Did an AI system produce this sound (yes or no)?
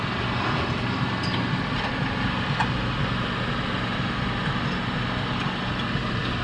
no